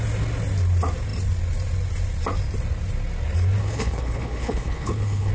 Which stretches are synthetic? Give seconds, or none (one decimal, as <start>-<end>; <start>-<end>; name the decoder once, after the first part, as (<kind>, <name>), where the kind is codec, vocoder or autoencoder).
3.6-5.3 (codec, HILCodec)